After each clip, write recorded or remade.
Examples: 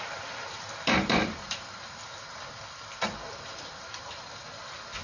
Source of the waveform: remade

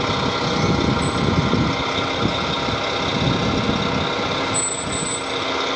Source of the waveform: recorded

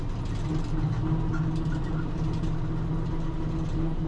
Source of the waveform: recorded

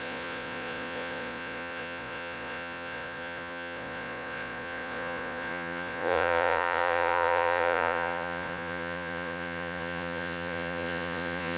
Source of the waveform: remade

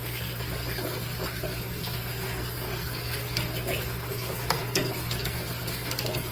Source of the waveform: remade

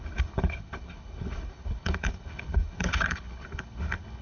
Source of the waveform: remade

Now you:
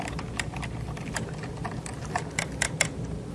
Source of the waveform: recorded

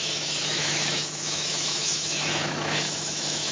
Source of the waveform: remade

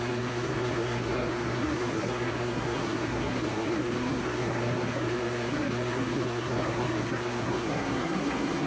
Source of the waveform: remade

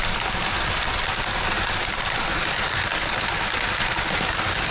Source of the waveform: recorded